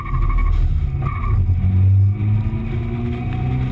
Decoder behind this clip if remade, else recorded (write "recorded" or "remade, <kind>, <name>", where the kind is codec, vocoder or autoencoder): recorded